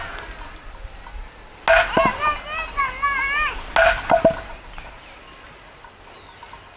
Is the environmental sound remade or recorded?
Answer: recorded